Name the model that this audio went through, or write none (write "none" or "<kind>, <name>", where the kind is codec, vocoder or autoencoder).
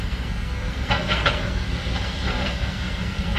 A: codec, SNAC